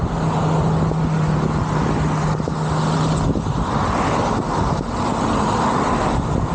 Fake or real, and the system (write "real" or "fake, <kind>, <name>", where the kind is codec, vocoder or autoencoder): real